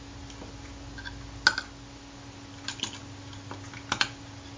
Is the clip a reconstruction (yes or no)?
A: no